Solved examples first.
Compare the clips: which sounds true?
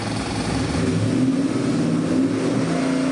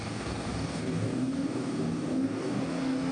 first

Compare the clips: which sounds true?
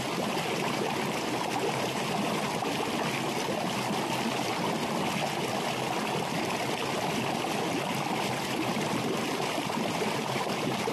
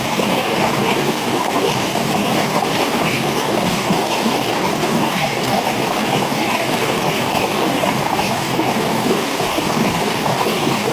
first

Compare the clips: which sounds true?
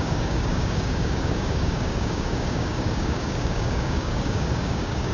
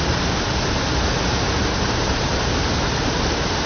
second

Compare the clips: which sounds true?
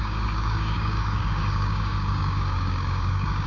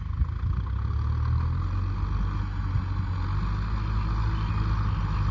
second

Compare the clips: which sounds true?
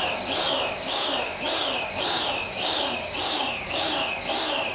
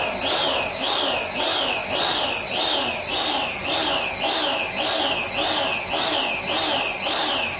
second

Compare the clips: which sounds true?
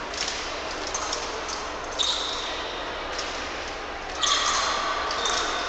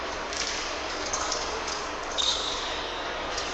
first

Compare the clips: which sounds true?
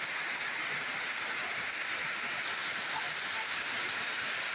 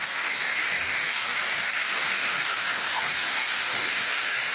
first